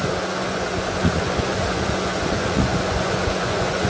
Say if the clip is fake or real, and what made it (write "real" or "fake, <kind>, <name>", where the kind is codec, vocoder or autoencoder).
fake, vocoder, Vocos